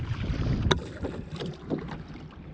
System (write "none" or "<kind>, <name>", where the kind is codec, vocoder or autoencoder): none